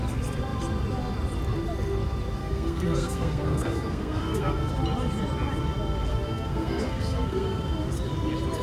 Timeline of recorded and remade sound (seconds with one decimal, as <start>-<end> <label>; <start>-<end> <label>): 0.0-2.4 recorded; 2.4-4.7 remade; 4.7-6.1 recorded; 6.1-7.6 remade; 7.6-8.6 recorded